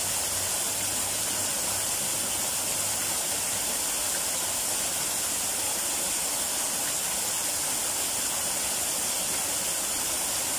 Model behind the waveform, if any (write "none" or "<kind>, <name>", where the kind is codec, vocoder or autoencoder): none